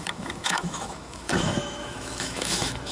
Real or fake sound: fake